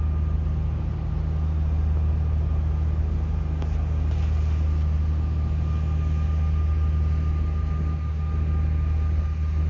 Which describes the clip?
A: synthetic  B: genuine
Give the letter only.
B